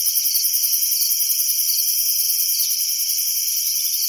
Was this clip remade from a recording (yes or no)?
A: no